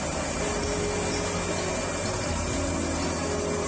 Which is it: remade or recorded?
recorded